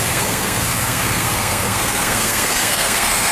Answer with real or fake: fake